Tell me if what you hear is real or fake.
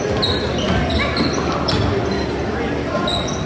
real